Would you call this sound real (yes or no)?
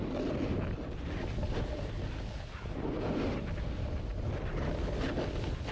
yes